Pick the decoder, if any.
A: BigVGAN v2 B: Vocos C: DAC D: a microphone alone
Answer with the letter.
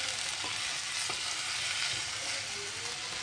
D